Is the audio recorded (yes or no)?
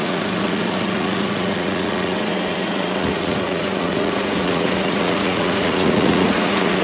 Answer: no